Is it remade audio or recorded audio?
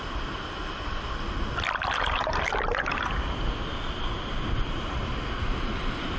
recorded